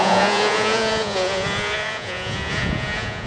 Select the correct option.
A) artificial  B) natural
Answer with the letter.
A